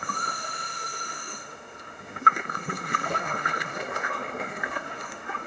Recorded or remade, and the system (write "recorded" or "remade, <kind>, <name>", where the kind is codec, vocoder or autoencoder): remade, autoencoder, DAC-VAE